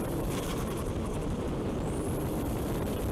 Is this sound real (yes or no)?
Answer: no